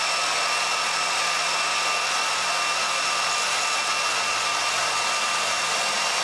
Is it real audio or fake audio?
real